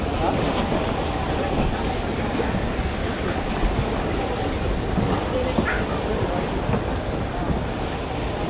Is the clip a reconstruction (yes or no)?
no